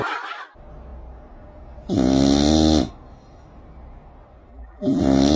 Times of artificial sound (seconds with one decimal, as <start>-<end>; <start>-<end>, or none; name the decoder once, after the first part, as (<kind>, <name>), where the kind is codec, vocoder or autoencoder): 4.5-5.0 (vocoder, BigVGAN v2)